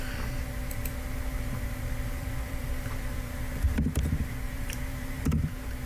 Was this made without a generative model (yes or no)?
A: no